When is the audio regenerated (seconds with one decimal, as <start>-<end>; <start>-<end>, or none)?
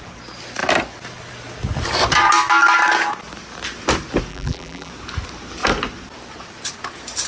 4.3-4.9